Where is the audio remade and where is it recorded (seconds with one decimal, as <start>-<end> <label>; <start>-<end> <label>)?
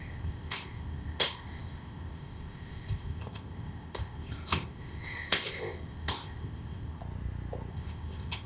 0.0-7.0 remade; 7.0-7.7 recorded; 7.7-8.5 remade